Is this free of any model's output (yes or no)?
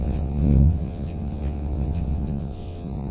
no